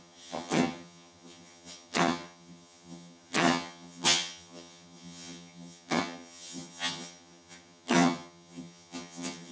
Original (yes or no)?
no